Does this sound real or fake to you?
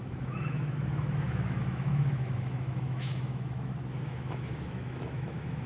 fake